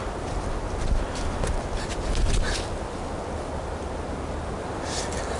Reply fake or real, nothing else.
real